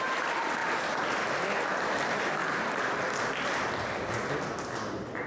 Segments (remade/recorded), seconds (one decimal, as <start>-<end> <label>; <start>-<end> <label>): 0.0-5.3 recorded